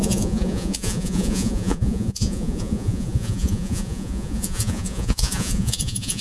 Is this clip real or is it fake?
fake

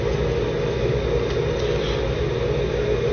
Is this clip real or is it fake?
real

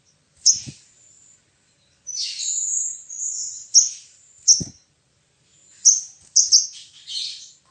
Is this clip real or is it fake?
real